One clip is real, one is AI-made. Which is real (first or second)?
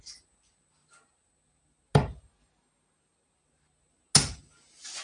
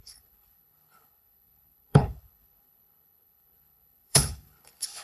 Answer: first